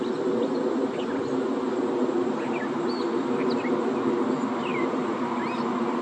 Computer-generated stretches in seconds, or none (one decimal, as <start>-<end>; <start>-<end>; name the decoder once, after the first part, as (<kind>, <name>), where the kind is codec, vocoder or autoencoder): 4.7-6.0 (vocoder, BigVGAN v2)